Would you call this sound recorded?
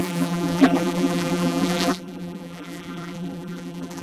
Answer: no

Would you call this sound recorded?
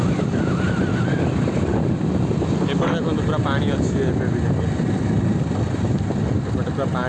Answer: yes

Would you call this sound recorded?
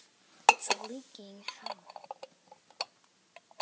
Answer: yes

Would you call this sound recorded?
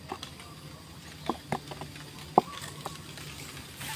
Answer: yes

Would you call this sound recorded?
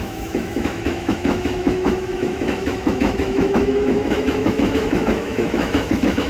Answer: no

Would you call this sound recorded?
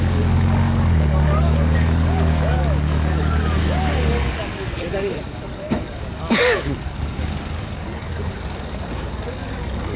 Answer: no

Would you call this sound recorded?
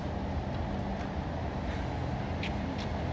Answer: yes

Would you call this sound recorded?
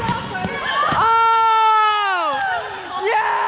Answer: yes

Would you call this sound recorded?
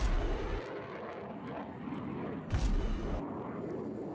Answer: yes